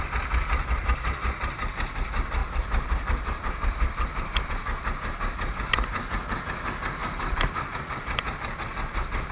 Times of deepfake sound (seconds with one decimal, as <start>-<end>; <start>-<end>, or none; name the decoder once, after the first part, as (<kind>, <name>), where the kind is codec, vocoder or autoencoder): 2.4-4.5 (vocoder, BigVGAN v2); 7.0-8.3